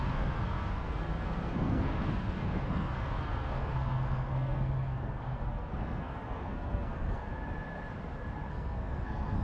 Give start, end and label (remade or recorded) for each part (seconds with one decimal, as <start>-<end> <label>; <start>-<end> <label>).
0.0-7.3 remade; 7.3-8.5 recorded; 8.5-9.4 remade